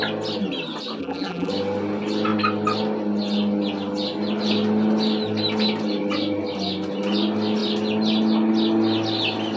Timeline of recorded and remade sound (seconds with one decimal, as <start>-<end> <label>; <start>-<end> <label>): 0.0-1.0 recorded; 1.0-1.5 remade; 1.5-9.6 recorded